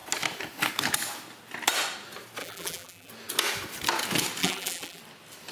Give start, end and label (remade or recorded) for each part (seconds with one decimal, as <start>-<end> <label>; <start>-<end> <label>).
0.0-2.4 recorded; 2.4-3.1 remade; 3.1-4.4 recorded; 4.4-5.0 remade; 5.0-5.5 recorded